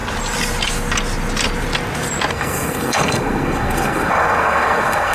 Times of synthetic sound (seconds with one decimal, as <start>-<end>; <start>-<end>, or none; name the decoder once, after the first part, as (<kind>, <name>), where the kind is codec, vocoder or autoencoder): 2.3-5.1 (codec, SNAC)